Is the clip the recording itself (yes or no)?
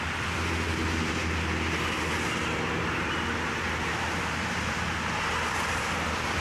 yes